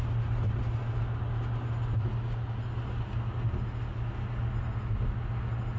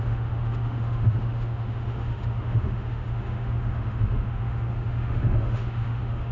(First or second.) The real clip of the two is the first